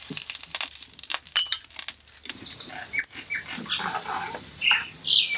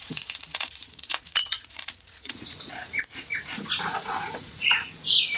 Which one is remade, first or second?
second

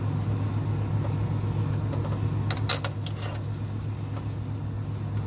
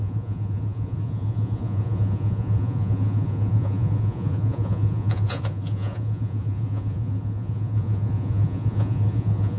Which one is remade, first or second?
second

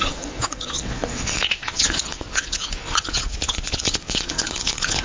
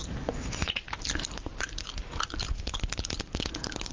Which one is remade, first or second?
first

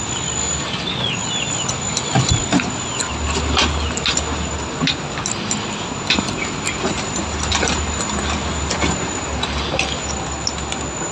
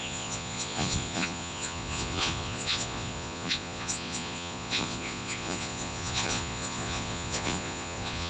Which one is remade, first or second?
second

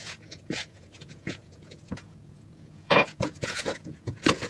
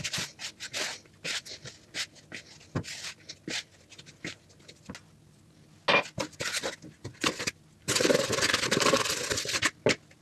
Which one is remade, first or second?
first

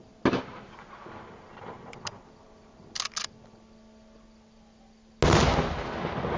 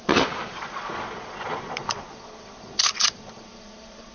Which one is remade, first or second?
second